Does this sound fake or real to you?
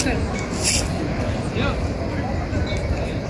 real